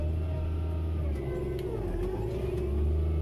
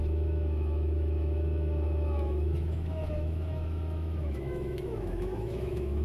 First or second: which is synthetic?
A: second